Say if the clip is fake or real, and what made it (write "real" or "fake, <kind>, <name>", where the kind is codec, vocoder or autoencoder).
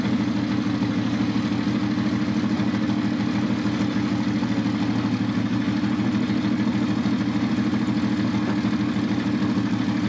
real